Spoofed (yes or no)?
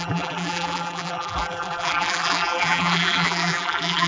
yes